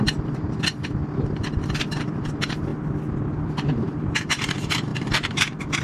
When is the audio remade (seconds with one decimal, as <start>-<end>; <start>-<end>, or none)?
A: 0.0-1.0; 1.9-2.7; 4.0-5.8